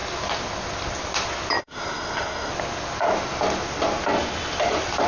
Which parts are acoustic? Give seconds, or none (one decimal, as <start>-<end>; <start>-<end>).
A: 0.0-1.6; 2.5-5.1